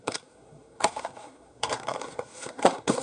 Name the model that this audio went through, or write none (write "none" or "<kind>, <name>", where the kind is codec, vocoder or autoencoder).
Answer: codec, SNAC